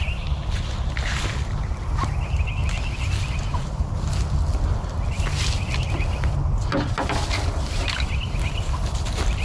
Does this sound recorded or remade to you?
recorded